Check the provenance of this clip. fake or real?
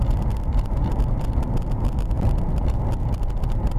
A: fake